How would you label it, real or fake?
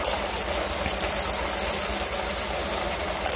real